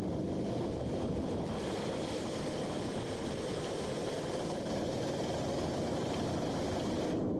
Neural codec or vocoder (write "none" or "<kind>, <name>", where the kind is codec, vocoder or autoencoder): none